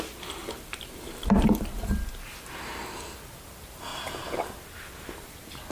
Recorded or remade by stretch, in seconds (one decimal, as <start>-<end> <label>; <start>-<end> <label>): 0.0-0.4 recorded; 0.4-2.1 remade; 2.1-3.9 recorded; 3.9-4.5 remade; 4.5-5.7 recorded